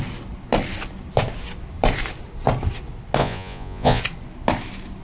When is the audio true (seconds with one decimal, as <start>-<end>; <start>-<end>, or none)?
0.0-3.2; 4.0-5.0